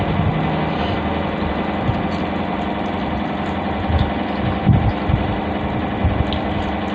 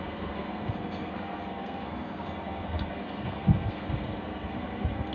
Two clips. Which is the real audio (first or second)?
first